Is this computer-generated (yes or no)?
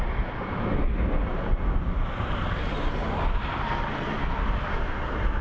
no